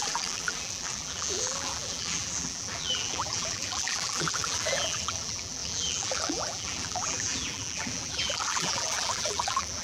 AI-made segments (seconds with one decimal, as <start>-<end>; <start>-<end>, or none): 0.0-9.8

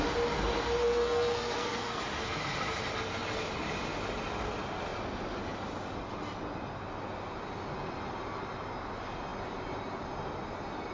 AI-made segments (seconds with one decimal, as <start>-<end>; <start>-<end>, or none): 0.8-2.0

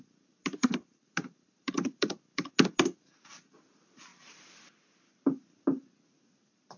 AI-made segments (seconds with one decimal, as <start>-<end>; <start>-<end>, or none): 0.4-1.7

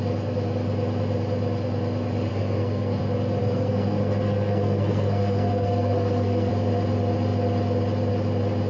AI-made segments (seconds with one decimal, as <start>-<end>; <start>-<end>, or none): 2.3-3.0; 3.4-6.5

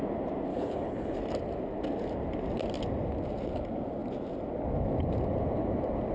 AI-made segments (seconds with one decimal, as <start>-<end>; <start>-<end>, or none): 0.5-1.2

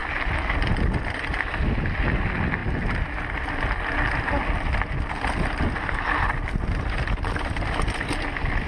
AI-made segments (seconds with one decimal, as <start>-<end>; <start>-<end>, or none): none